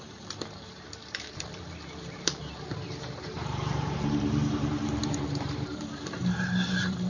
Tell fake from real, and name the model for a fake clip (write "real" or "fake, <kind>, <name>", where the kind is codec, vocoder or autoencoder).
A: fake, vocoder, BigVGAN v2